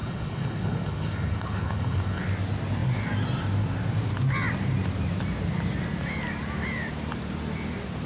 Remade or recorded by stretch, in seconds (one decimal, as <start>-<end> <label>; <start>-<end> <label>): 0.0-2.2 remade; 2.2-8.1 recorded